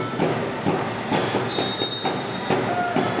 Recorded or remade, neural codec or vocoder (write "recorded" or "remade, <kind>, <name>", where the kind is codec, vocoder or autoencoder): recorded